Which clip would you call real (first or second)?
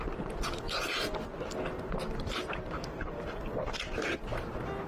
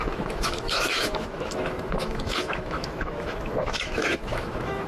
first